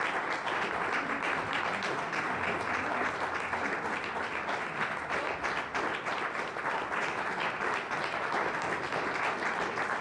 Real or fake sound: real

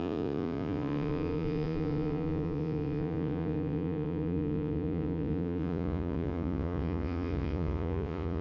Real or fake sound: fake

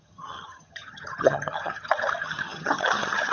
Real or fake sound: fake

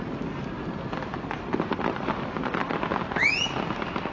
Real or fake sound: real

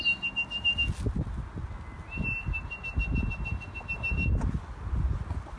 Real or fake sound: real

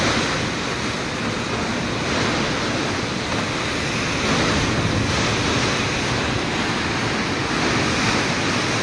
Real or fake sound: real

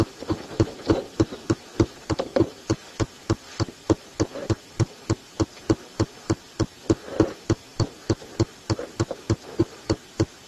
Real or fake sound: fake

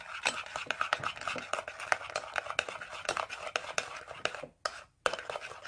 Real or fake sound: real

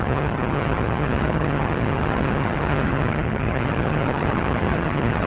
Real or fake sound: fake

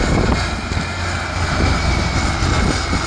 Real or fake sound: real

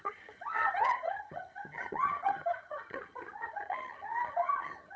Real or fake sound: fake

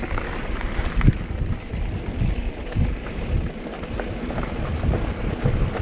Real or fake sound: real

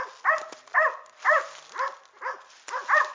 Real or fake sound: real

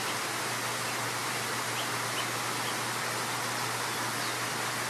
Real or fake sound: real